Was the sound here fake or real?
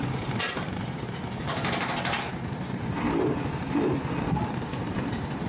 fake